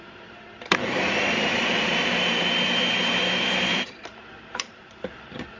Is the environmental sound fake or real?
fake